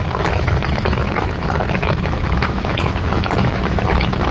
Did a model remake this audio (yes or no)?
yes